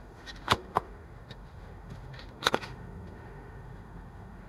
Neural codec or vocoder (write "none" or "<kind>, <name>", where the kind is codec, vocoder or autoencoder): autoencoder, DAC-VAE